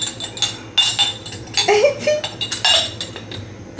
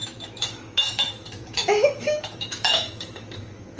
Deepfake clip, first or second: second